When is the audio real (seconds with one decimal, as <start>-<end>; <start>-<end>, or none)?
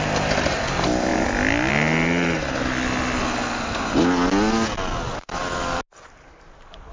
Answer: 0.0-6.9